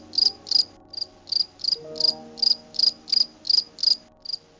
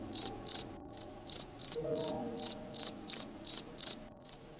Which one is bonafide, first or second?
first